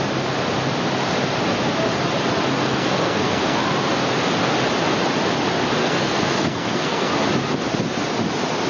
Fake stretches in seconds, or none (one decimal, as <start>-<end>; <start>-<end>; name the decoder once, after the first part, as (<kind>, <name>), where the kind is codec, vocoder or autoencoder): 2.6-3.6 (codec, SNAC); 5.8-7.1